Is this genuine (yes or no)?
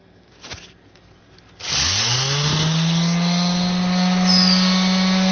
yes